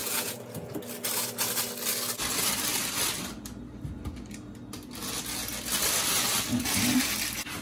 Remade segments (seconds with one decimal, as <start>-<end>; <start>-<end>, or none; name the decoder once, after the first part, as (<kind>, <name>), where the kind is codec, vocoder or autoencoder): 0.0-0.7 (vocoder, Vocos)